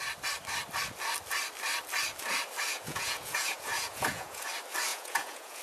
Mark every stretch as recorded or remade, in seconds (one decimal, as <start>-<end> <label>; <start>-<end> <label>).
0.0-2.7 recorded; 2.7-4.5 remade; 4.5-4.9 recorded; 4.9-5.6 remade